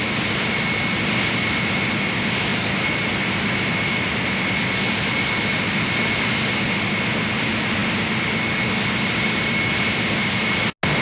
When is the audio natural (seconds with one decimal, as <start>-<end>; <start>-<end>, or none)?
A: 0.0-11.0